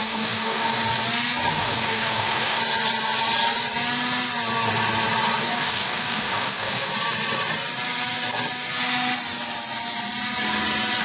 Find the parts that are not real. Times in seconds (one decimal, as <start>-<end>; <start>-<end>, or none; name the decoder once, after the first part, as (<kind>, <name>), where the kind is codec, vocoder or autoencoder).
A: 0.0-0.8 (codec, DAC); 1.5-2.6; 5.4-6.9